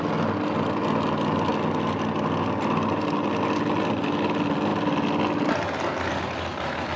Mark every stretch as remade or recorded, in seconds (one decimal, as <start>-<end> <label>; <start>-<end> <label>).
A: 0.0-7.0 recorded